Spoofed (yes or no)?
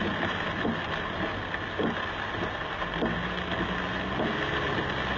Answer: no